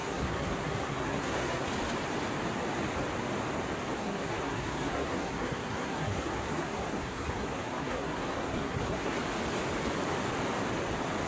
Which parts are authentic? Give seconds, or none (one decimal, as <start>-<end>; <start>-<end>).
1.7-4.0; 9.2-11.3